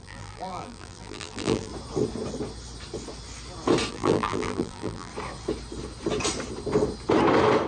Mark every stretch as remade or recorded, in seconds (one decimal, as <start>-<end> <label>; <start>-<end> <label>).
0.0-1.7 remade; 1.7-3.9 recorded; 3.9-5.1 remade; 5.1-7.7 recorded